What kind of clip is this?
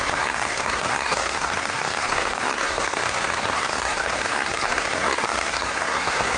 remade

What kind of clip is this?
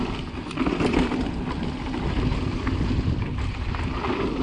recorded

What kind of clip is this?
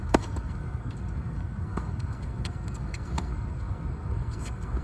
remade